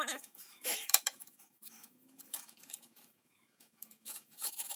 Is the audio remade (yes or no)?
yes